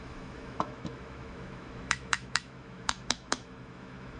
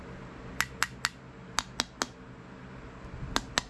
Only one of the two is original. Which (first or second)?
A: second